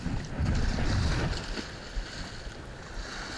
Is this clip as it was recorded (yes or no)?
yes